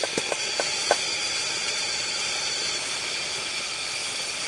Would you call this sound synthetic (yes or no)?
no